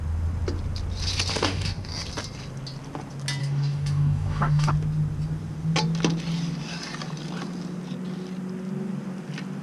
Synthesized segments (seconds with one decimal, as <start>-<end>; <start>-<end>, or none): 1.3-1.9; 3.4-4.7